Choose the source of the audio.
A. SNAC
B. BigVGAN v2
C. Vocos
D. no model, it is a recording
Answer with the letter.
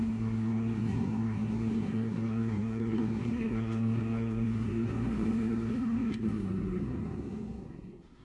A